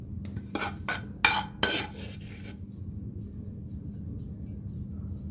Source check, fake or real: real